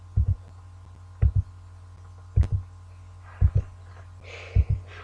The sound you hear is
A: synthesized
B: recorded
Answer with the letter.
B